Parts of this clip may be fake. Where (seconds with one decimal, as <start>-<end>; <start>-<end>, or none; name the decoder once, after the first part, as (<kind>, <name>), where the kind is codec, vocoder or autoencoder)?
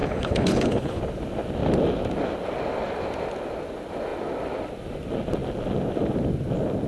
0.0-1.0 (codec, HILCodec)